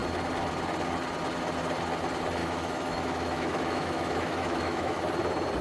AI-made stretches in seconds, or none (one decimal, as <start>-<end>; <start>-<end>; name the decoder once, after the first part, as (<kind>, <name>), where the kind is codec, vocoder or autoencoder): 2.4-5.0 (autoencoder, DAC-VAE)